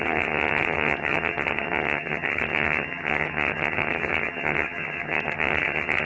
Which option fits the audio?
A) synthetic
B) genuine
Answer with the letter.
A